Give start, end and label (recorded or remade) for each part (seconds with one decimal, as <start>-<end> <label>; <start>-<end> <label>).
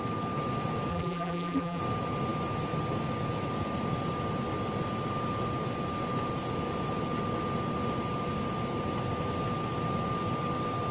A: 0.0-0.9 recorded; 0.9-1.8 remade; 1.8-10.9 recorded